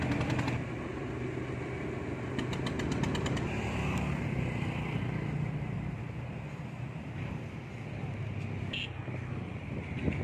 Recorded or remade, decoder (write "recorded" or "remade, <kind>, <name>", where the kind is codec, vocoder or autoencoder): recorded